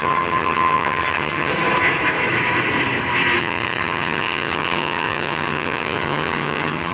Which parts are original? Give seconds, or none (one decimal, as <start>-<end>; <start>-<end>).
1.5-3.4